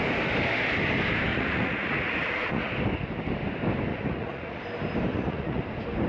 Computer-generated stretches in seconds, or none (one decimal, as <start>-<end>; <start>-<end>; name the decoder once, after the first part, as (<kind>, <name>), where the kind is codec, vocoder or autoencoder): 1.3-2.7 (vocoder, Vocos); 3.9-4.6; 5.1-5.6